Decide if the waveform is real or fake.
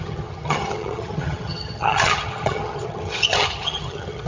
fake